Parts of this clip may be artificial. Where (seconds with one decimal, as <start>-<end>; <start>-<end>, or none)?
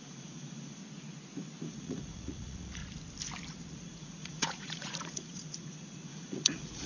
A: 0.0-0.8; 1.6-2.8; 3.7-6.9